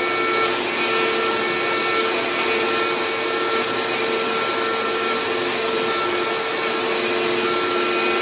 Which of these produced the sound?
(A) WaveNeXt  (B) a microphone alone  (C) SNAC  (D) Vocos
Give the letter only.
B